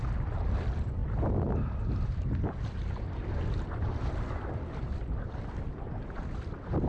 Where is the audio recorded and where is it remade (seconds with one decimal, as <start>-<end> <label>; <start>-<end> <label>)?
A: 0.0-6.9 recorded

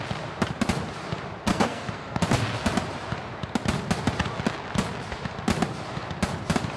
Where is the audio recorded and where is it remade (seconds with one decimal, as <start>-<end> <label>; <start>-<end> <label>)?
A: 0.0-1.5 recorded; 1.5-2.2 remade; 2.2-6.8 recorded

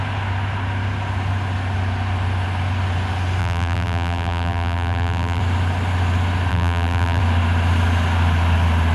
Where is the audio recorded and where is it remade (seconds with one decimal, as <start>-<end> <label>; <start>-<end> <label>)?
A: 0.0-3.4 recorded; 3.4-5.4 remade; 5.4-6.5 recorded; 6.5-7.2 remade; 7.2-8.9 recorded